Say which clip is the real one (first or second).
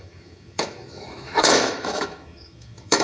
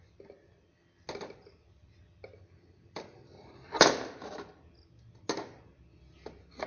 second